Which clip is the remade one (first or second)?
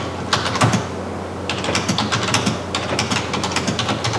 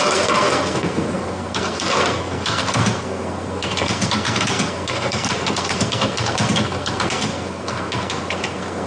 second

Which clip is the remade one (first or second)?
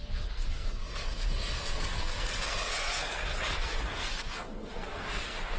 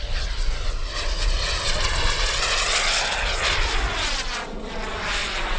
first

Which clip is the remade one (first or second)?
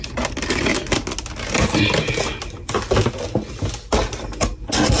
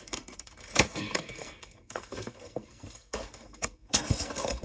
second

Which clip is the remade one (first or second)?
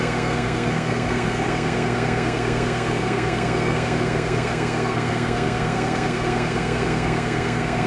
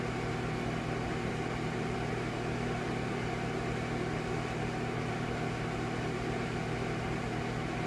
first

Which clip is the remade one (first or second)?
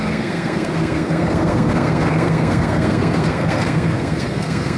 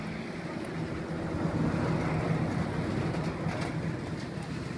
first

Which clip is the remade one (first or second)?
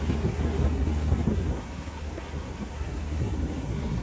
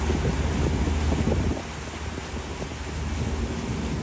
first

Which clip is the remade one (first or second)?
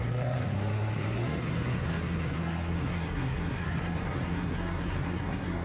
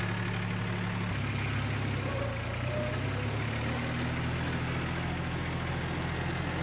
first